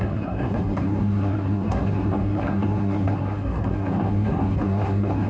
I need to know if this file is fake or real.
fake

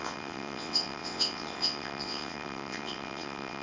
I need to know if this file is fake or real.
fake